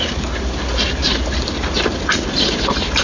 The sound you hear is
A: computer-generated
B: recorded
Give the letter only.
B